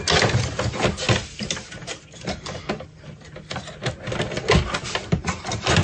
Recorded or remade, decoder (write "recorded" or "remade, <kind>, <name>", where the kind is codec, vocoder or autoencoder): recorded